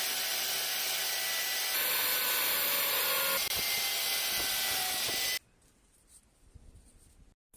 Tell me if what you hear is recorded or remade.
recorded